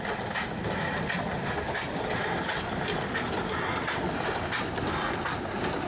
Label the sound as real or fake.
real